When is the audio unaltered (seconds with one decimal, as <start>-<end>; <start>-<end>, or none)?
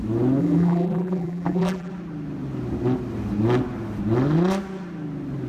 0.0-0.4; 1.9-5.5